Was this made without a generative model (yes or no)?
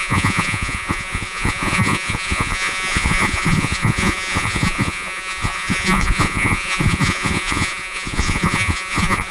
no